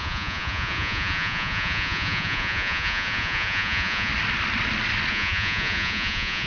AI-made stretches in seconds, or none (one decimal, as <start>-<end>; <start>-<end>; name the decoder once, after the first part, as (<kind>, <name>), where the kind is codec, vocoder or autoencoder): 0.0-4.1 (vocoder, Vocos); 5.1-6.5